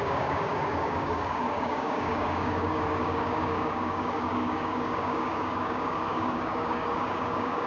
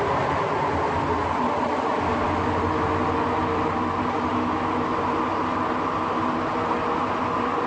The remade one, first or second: first